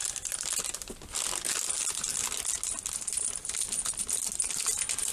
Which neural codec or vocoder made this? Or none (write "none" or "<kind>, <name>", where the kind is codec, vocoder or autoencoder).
none